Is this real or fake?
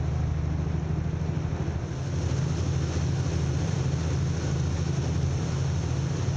real